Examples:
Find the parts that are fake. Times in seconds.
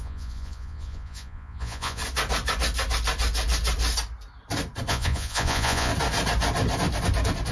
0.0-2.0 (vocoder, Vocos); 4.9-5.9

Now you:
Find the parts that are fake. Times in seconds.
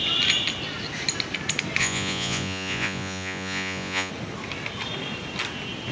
1.8-4.1 (vocoder, Vocos)